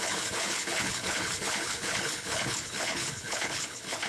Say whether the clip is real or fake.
fake